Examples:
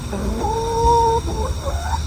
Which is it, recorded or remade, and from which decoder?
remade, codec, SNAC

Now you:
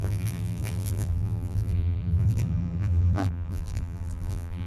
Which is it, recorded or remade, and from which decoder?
remade, vocoder, BigVGAN v2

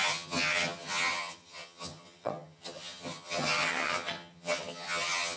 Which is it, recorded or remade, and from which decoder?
remade, vocoder, HiFi-GAN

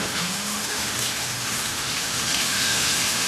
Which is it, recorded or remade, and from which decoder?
remade, autoencoder, DAC-VAE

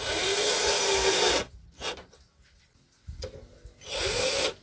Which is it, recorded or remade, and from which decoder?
recorded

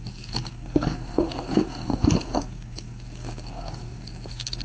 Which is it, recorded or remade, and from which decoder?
remade, codec, SNAC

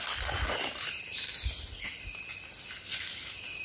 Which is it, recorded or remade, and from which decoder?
recorded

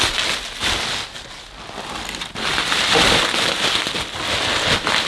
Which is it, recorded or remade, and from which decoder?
recorded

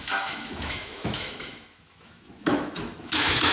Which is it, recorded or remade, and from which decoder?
remade, autoencoder, DAC-VAE